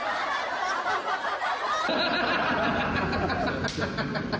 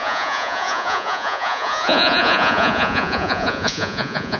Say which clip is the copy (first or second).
second